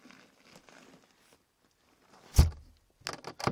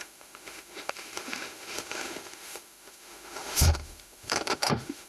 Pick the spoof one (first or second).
second